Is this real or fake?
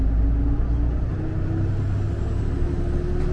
real